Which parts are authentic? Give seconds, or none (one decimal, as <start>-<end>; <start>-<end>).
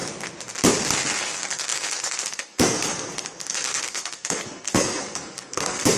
0.0-1.2